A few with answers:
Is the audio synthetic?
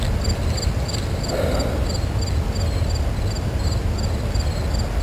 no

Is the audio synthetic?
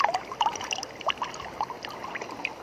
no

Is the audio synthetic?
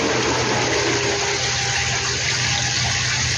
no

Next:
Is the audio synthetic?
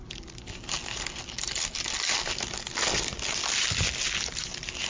no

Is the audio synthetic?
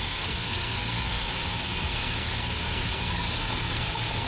yes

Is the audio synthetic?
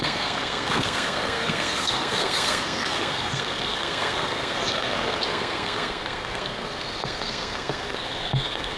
yes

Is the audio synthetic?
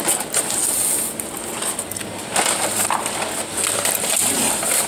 no